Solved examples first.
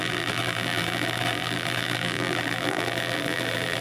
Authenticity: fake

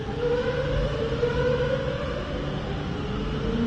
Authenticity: real